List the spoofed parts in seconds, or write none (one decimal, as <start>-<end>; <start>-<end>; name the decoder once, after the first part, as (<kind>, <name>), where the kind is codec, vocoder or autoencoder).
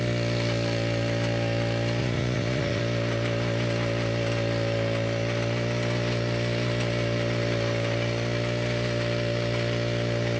2.0-2.8 (vocoder, Vocos)